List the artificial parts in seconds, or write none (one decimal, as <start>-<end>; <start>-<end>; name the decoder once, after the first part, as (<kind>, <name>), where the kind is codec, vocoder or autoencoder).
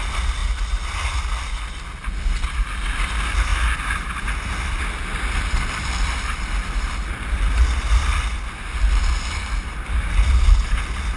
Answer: none